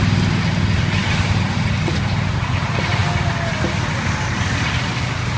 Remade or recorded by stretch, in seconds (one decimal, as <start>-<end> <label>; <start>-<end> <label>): 0.0-5.4 recorded